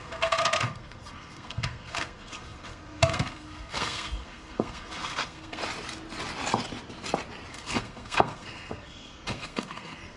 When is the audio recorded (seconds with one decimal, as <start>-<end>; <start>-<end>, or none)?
5.6-7.5